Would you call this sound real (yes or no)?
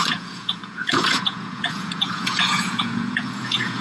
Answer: no